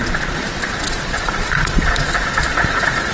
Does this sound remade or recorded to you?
remade